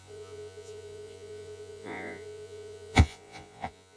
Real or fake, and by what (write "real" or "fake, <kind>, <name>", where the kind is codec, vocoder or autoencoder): fake, vocoder, Vocos